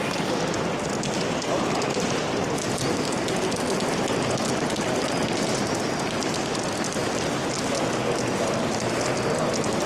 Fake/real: real